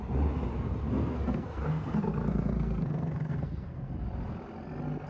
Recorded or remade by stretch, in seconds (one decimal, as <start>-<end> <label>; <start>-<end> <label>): 0.0-0.8 recorded; 0.8-3.9 remade; 3.9-5.1 recorded